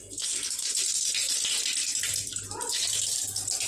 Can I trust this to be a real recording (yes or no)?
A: yes